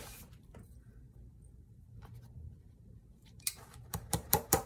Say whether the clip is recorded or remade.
remade